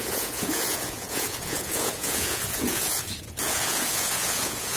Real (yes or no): no